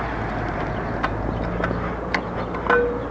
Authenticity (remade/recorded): recorded